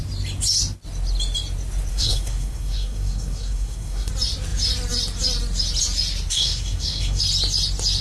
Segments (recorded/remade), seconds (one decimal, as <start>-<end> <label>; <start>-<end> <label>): 0.0-1.9 recorded; 1.9-4.1 remade; 4.1-6.3 recorded; 6.3-7.2 remade; 7.2-8.0 recorded